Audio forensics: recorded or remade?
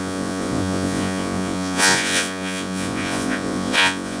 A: remade